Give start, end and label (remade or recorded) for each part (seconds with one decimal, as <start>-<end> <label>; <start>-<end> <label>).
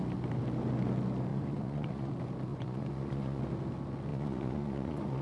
0.0-1.3 recorded; 1.3-2.1 remade; 2.1-2.5 recorded; 2.5-3.4 remade; 3.4-4.1 recorded; 4.1-5.2 remade